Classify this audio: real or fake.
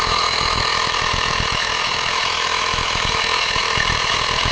fake